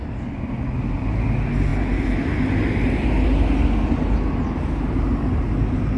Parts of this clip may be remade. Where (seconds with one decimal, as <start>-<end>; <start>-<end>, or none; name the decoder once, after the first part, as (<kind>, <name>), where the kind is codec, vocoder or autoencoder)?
none